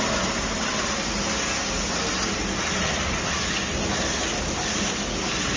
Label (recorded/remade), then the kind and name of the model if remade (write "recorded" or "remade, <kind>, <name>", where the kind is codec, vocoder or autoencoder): recorded